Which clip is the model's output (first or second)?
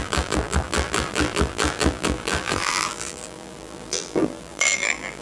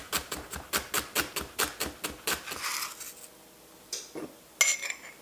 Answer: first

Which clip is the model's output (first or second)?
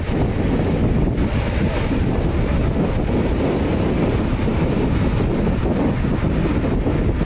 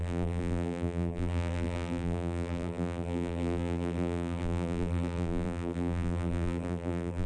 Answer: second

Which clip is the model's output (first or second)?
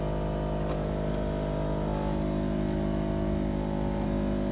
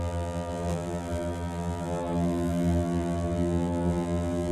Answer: second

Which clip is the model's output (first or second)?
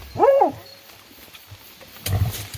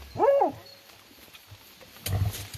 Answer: first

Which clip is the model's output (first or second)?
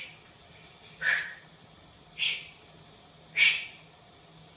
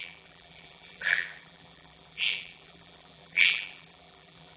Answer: second